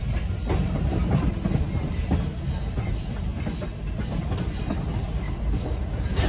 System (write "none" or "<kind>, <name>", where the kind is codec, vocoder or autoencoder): none